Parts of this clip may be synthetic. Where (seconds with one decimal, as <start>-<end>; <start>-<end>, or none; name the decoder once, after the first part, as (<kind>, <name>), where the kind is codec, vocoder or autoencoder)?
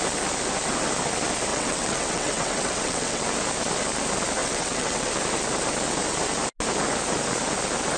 1.5-3.2 (vocoder, WaveNeXt); 4.4-5.1